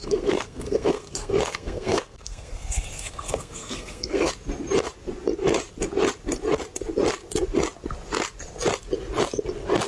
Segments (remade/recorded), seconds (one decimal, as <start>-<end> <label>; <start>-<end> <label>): 0.0-4.3 remade; 4.3-9.9 recorded